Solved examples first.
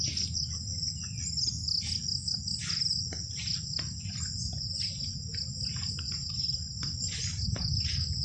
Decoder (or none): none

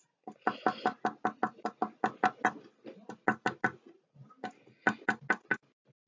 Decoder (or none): none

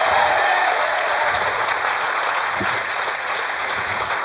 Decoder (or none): vocoder, Vocos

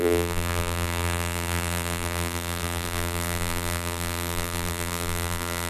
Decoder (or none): vocoder, BigVGAN v2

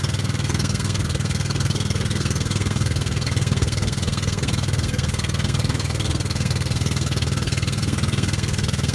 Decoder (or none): codec, SNAC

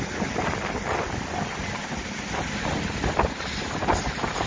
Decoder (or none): none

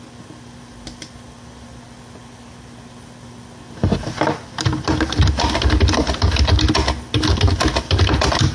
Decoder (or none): none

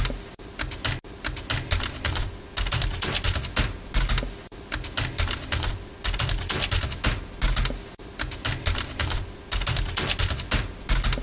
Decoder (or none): none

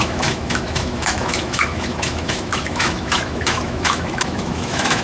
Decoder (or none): autoencoder, DAC-VAE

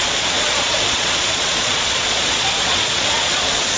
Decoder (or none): vocoder, Vocos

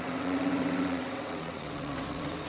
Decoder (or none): vocoder, WaveNeXt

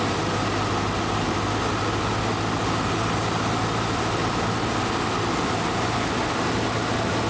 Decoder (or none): none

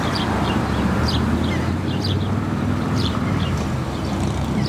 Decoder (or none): vocoder, BigVGAN v2